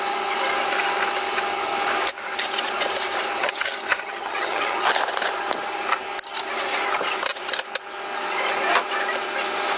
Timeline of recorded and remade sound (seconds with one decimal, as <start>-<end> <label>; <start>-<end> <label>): 0.0-3.4 recorded; 3.4-4.9 remade; 4.9-9.8 recorded